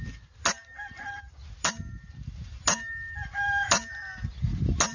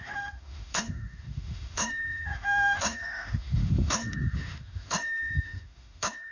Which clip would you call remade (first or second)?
second